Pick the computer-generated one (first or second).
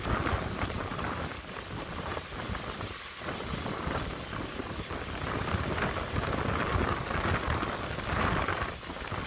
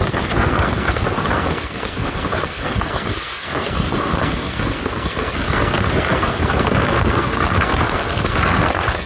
second